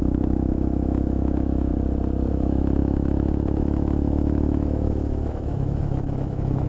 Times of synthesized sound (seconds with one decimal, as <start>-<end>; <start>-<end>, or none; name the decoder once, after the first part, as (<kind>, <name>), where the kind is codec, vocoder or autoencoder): 0.0-1.7 (autoencoder, DAC-VAE); 2.3-6.7